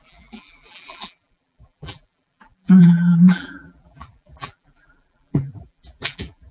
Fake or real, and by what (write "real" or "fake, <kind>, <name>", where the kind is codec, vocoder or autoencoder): fake, vocoder, BigVGAN v2